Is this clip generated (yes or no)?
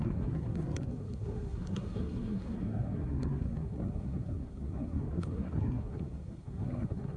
yes